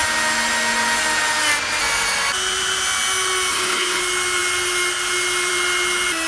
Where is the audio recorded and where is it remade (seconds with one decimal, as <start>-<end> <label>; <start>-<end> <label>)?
0.0-3.5 recorded; 3.5-4.0 remade; 4.0-6.3 recorded